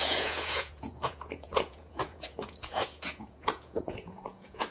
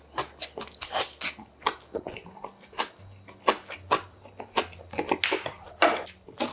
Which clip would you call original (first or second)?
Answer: second